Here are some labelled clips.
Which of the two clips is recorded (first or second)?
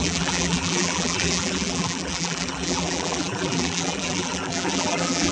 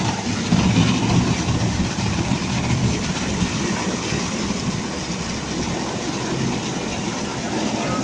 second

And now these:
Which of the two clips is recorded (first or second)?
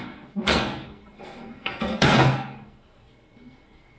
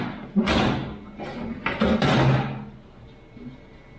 second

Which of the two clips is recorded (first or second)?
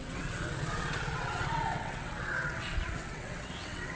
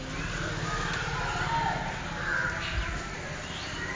second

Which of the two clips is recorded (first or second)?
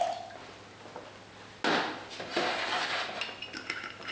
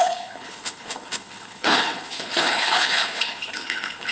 first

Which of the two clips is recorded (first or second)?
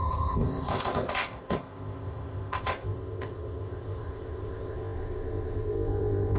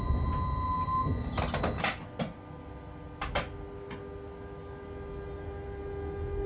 second